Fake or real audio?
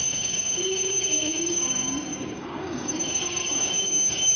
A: fake